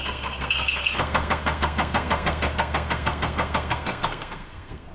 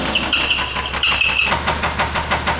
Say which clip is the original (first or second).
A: second